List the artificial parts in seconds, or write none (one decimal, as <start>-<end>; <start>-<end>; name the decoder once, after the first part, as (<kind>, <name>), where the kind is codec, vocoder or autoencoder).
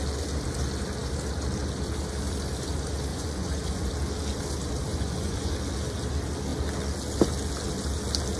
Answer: 3.1-3.9 (vocoder, Vocos); 4.9-5.5